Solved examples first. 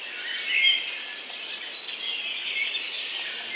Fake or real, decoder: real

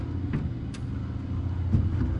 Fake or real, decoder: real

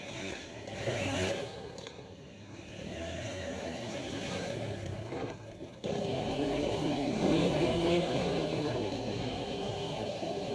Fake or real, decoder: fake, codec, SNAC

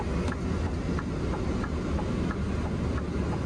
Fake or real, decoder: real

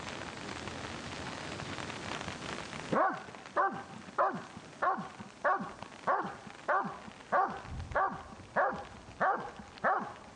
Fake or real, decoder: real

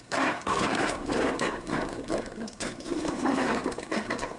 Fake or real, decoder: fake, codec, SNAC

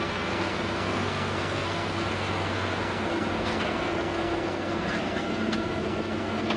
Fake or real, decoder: fake, codec, SNAC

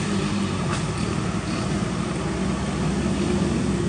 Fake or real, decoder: real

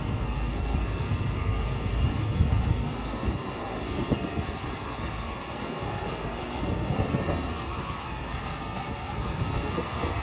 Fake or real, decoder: fake, codec, SNAC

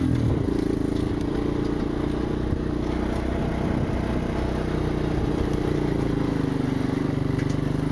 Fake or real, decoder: real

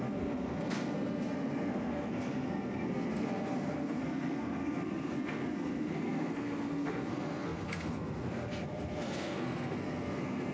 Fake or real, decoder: fake, codec, SNAC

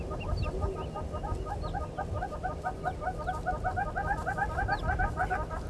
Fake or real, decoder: real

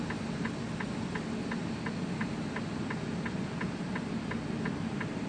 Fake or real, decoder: real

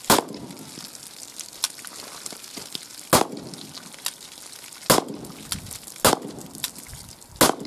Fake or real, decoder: real